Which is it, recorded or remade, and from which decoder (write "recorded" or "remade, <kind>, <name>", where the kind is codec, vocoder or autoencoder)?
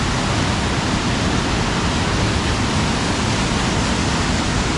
recorded